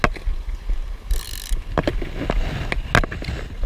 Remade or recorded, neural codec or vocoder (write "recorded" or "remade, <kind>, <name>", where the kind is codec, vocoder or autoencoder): recorded